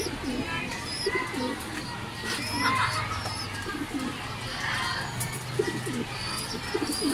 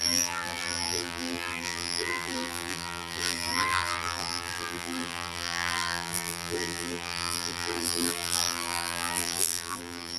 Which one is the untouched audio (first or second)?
first